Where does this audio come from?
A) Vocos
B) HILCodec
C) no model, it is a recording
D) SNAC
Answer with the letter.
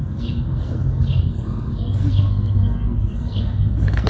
D